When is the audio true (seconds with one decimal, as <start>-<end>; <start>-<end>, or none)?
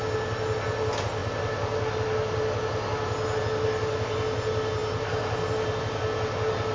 0.0-6.7